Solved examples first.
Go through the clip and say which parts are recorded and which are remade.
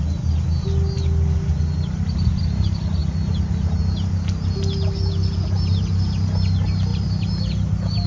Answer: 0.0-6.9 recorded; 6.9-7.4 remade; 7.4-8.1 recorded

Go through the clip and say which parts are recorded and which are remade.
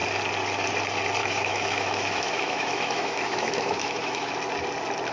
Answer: 0.0-1.2 recorded; 1.2-4.3 remade; 4.3-5.1 recorded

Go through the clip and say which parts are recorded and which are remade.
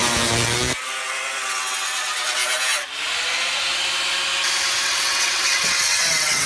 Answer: 0.0-0.8 recorded; 0.8-2.4 remade; 2.4-4.7 recorded; 4.7-6.5 remade